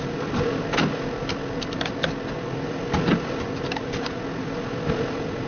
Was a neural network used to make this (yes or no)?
no